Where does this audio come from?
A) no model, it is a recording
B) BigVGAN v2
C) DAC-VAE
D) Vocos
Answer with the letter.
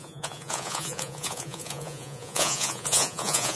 D